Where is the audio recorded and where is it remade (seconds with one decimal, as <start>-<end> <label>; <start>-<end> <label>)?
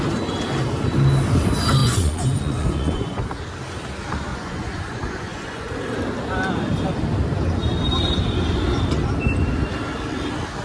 0.0-1.8 recorded; 1.8-3.4 remade; 3.4-4.3 recorded; 4.3-5.7 remade; 5.7-10.6 recorded